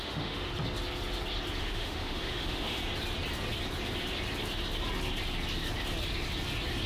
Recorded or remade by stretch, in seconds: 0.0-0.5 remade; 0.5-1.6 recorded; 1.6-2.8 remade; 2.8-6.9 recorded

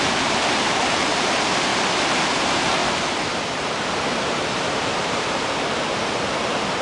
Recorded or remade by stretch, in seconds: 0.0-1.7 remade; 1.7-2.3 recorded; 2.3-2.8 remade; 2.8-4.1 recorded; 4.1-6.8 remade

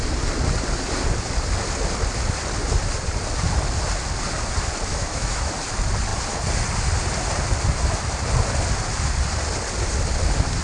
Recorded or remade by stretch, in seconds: 0.0-4.9 recorded; 4.9-5.5 remade; 5.5-10.6 recorded

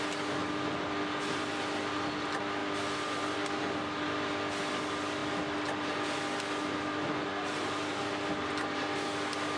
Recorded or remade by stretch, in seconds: 0.0-9.6 recorded